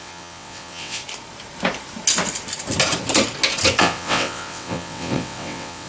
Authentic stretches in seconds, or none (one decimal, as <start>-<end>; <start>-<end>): 1.0-3.8